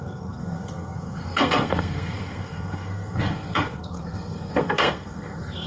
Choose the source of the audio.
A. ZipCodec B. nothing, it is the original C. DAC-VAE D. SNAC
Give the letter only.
D